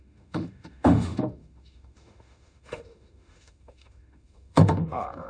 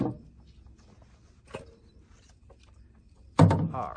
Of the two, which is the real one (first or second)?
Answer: second